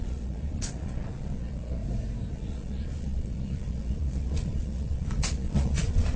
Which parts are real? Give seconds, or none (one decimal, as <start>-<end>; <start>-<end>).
1.8-2.3